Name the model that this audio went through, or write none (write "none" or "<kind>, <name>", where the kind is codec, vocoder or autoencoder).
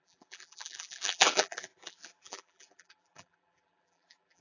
vocoder, BigVGAN v2